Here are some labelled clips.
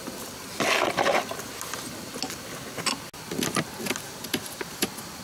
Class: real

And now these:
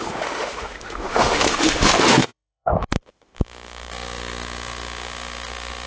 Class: fake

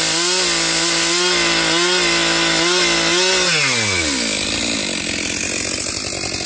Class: real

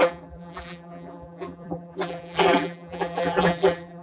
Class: fake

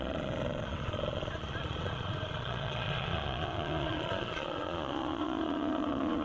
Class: fake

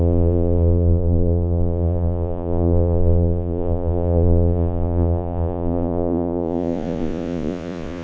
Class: fake